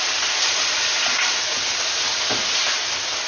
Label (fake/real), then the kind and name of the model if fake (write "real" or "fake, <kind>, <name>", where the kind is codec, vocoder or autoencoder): real